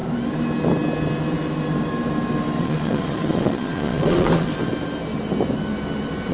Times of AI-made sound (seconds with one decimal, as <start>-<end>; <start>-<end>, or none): 2.6-4.5